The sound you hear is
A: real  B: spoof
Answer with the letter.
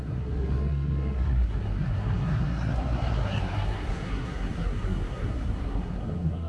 B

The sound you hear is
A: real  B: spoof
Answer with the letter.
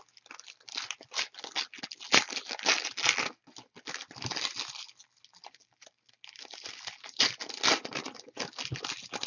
A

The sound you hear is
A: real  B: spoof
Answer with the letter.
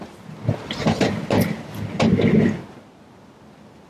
A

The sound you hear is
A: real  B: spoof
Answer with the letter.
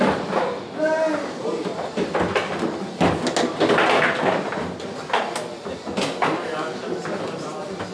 A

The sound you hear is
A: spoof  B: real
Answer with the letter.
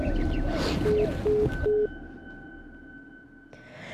B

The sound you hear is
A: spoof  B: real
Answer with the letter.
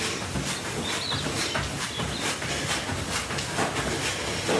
B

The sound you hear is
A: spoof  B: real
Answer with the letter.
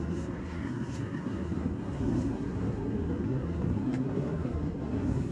A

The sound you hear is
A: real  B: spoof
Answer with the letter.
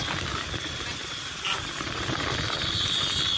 A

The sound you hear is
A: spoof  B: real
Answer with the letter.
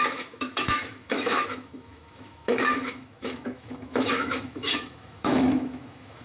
A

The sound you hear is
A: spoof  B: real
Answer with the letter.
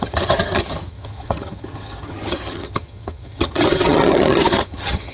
A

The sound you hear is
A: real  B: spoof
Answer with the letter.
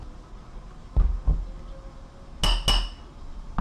A